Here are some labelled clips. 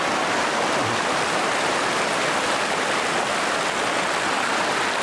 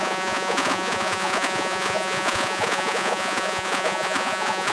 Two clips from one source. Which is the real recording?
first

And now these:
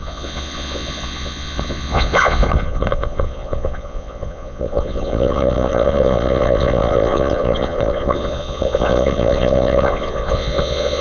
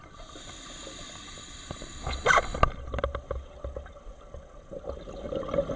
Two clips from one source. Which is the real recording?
second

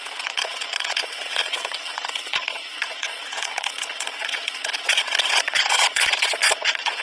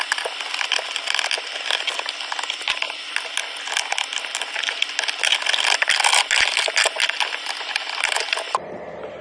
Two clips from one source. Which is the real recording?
second